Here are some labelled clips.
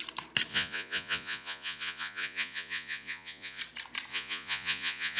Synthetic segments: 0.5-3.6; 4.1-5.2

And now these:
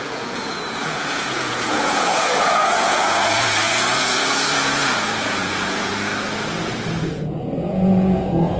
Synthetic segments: 0.0-6.1; 7.0-8.6